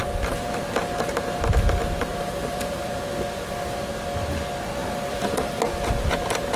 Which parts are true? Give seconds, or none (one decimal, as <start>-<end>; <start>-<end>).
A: 0.0-2.1; 3.0-4.8; 5.6-6.6